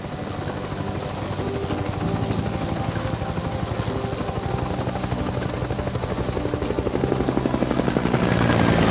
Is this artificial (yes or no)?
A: no